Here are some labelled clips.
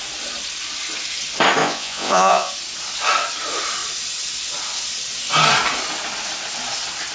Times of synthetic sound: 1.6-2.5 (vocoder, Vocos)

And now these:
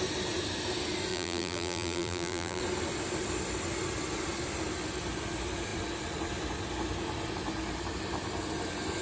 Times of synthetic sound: 1.1-2.6 (vocoder, BigVGAN v2)

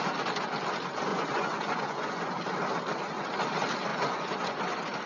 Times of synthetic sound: 1.1-2.3 (vocoder, Vocos); 3.9-4.6

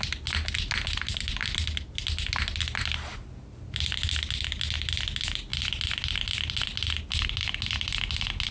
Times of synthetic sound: none

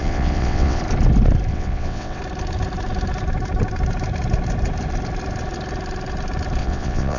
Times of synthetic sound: 0.0-0.8 (vocoder, WaveNeXt); 1.5-2.2; 6.6-7.2

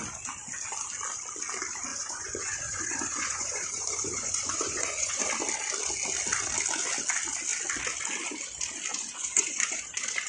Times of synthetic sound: 1.9-5.2 (vocoder, Vocos); 8.9-9.8

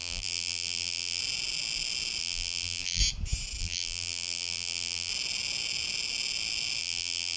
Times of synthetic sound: 0.0-1.2 (vocoder, BigVGAN v2); 2.2-3.0; 3.6-5.1; 6.8-7.4

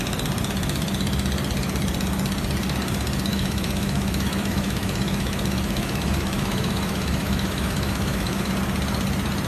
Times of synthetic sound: 3.3-8.5 (autoencoder, DAC-VAE)